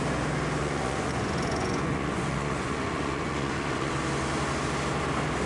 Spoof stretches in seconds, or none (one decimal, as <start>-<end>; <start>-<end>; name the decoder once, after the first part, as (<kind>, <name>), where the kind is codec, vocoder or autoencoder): 0.6-3.9 (vocoder, Vocos)